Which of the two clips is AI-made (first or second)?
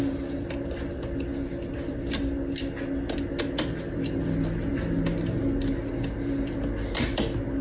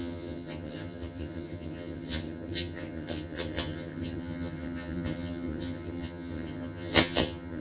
second